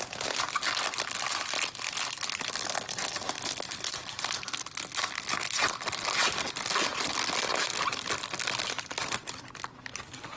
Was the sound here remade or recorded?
recorded